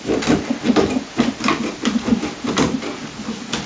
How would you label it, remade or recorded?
recorded